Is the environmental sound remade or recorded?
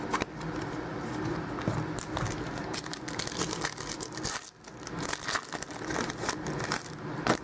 recorded